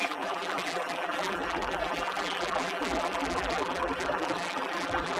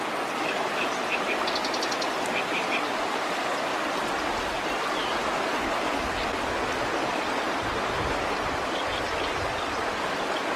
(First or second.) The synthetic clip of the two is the first